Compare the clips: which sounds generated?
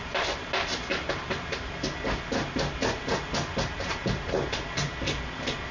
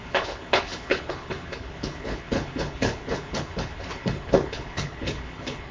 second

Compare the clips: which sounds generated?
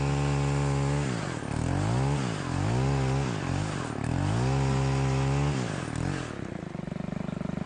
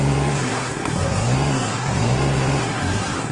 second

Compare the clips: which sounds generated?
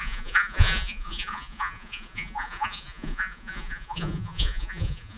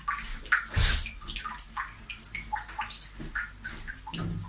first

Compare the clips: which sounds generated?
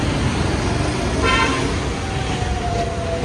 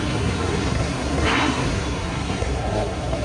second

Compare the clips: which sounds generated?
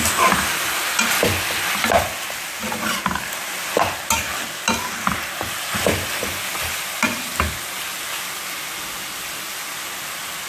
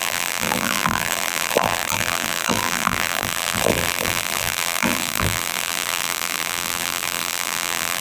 second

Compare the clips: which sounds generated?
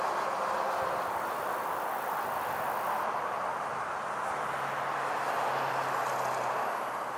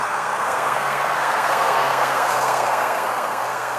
second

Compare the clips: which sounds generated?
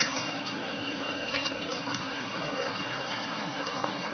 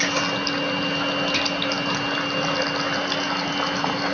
first